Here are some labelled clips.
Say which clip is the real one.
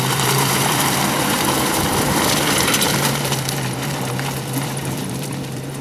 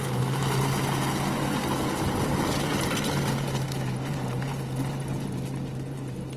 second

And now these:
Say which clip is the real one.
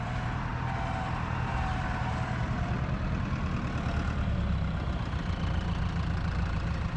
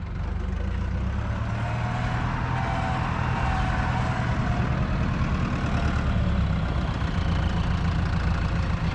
second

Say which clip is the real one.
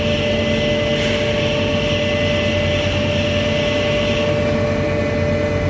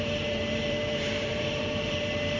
first